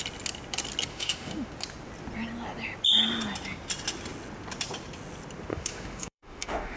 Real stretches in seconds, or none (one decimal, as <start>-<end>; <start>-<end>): 0.0-0.9; 1.5-5.5